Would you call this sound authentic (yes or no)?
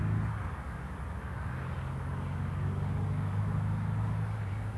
no